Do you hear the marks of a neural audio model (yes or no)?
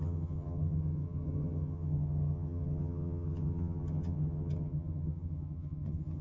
yes